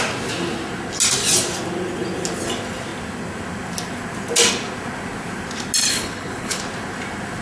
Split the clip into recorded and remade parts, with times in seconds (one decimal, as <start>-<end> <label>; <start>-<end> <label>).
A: 0.0-5.9 recorded; 5.9-6.6 remade; 6.6-7.4 recorded

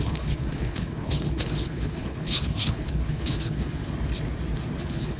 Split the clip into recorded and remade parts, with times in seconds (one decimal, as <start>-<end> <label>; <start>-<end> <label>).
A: 0.0-3.8 remade; 3.8-4.8 recorded; 4.8-5.2 remade

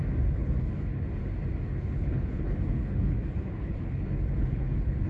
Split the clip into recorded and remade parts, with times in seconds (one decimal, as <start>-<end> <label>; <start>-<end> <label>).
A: 0.0-0.4 recorded; 0.4-1.1 remade; 1.1-1.7 recorded; 1.7-5.1 remade

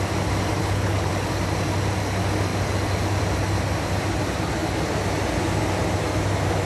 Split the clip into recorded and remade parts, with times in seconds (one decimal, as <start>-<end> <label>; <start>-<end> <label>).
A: 0.0-0.6 recorded; 0.6-1.1 remade; 1.1-6.7 recorded

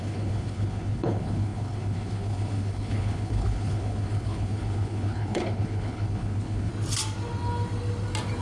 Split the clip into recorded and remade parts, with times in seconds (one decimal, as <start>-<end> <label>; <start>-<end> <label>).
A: 0.0-6.7 remade; 6.7-8.4 recorded

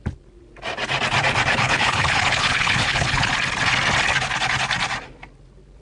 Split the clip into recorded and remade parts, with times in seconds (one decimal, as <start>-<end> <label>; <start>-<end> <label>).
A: 0.0-1.5 recorded; 1.5-3.3 remade; 3.3-5.8 recorded

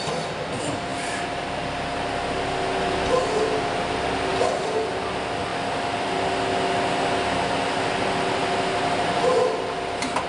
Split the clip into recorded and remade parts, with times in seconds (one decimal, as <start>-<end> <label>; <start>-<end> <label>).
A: 0.0-10.3 recorded